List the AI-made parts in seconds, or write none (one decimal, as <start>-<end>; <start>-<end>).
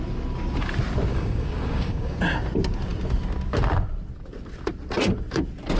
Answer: 1.1-2.2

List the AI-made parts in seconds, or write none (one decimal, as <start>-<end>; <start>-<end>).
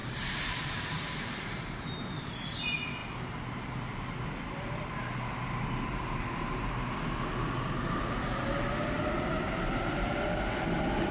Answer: 0.0-2.6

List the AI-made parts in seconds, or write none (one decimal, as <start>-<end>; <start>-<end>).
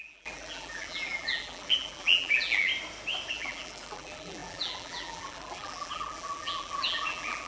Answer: 0.0-2.7; 3.3-7.5